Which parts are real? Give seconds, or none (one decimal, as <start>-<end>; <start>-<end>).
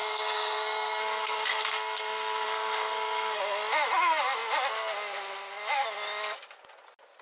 3.4-7.2